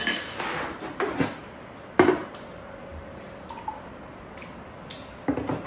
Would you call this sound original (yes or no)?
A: yes